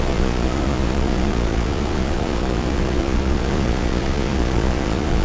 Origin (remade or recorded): remade